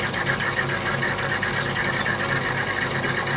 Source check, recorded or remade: recorded